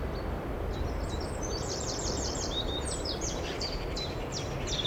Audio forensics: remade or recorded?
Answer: remade